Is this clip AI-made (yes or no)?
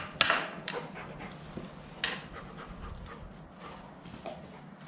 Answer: no